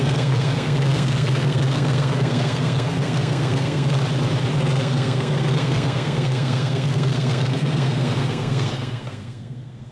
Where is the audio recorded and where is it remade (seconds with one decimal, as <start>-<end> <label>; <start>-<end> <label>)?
0.0-4.0 remade; 4.0-4.6 recorded; 4.6-9.9 remade